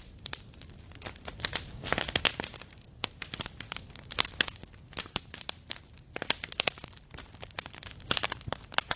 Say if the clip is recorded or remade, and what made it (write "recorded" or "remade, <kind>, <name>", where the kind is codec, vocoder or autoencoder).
recorded